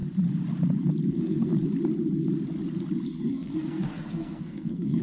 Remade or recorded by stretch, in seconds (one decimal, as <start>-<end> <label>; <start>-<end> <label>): 0.0-1.1 recorded; 1.1-1.5 remade; 1.5-3.3 recorded; 3.3-5.0 remade